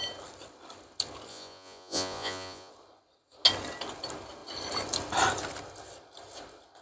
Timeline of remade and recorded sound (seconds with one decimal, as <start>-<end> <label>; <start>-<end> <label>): 0.0-1.3 recorded; 1.3-2.7 remade; 2.7-6.8 recorded